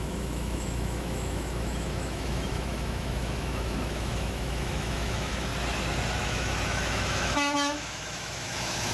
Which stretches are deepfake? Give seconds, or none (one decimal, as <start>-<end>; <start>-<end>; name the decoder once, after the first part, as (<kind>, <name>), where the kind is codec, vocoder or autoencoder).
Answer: 0.0-5.5 (autoencoder, DAC-VAE); 6.2-8.9

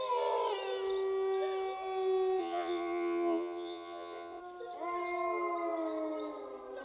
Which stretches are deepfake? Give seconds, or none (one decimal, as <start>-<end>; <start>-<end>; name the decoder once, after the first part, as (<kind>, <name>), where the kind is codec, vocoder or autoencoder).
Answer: 2.4-4.4 (vocoder, Vocos)

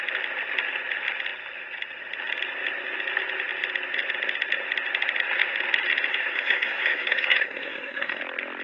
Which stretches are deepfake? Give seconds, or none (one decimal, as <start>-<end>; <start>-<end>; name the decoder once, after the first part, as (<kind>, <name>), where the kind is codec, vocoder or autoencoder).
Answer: 6.1-8.2 (codec, SNAC)

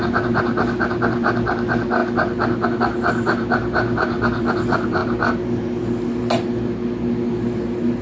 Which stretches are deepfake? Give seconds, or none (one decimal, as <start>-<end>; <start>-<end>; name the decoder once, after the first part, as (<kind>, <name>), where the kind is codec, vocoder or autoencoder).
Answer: none

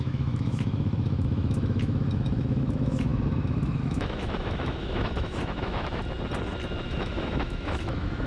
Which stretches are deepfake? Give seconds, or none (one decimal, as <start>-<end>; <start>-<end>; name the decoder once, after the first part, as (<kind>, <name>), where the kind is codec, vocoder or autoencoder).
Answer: 0.0-6.0 (autoencoder, DAC-VAE); 6.9-8.3

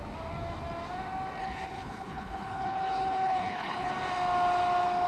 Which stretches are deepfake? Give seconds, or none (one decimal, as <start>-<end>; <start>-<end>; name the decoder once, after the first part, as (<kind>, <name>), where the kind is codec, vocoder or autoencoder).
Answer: 1.4-3.9 (codec, HILCodec)

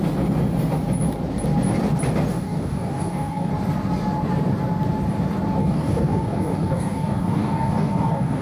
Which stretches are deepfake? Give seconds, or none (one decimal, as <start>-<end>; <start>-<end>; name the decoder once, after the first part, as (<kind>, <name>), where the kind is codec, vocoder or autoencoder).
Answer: 2.3-3.5 (codec, DAC); 5.6-8.4